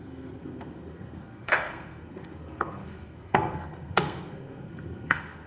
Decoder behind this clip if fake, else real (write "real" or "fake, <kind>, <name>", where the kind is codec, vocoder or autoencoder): fake, codec, SNAC